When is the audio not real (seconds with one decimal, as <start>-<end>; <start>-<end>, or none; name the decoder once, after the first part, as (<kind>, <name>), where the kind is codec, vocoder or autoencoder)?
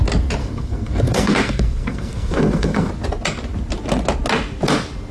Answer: 0.4-2.9 (codec, SNAC)